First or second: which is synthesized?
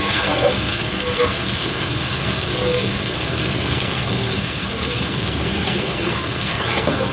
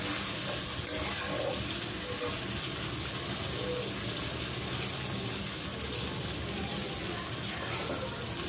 first